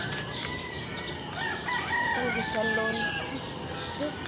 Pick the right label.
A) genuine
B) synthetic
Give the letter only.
A